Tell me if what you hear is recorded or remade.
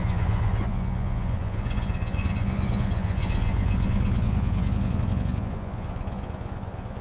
remade